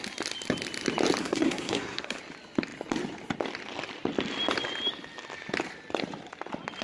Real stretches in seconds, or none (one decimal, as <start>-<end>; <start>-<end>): 0.0-1.2; 2.2-6.8